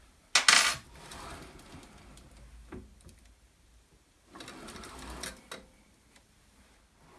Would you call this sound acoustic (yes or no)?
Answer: yes